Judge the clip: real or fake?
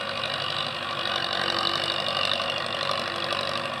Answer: real